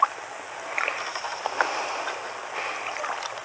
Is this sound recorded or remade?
recorded